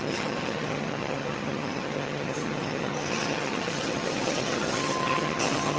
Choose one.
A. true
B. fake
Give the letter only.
B